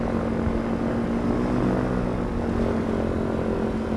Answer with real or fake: real